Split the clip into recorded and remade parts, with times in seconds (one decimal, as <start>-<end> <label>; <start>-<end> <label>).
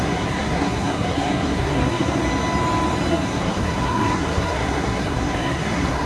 0.0-2.2 remade; 2.2-3.1 recorded; 3.1-6.1 remade